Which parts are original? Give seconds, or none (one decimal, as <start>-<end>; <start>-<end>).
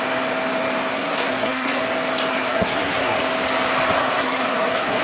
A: 0.0-0.9; 1.8-2.3; 3.2-4.0